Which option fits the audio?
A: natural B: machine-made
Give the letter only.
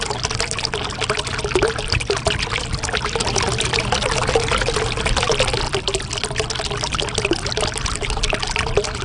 A